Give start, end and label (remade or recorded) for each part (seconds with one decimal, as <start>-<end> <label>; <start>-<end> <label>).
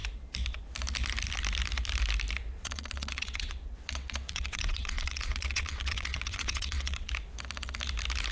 0.0-2.5 recorded; 2.5-7.1 remade; 7.1-8.3 recorded